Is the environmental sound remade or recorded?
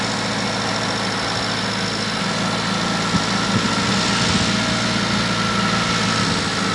recorded